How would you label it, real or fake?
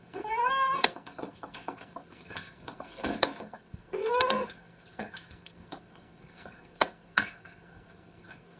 fake